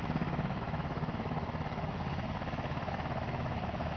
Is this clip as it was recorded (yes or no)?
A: no